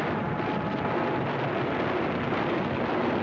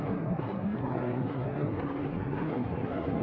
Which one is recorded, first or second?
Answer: first